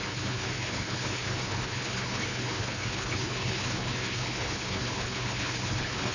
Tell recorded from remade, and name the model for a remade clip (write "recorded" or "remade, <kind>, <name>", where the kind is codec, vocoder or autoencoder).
remade, codec, HILCodec